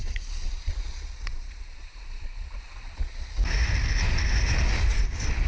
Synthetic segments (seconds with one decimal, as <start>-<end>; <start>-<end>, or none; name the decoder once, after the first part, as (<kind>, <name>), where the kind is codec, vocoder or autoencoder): 0.0-3.3 (vocoder, Vocos)